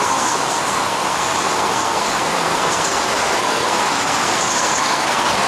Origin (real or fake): fake